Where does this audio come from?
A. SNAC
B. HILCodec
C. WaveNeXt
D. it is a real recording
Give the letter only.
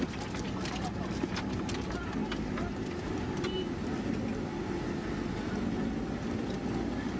D